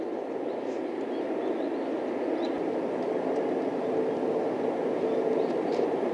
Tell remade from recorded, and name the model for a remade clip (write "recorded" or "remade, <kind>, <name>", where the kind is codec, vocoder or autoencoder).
recorded